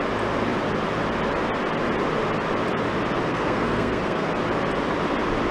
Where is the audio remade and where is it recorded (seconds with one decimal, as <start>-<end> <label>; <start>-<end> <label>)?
0.0-3.3 recorded; 3.3-4.3 remade; 4.3-5.5 recorded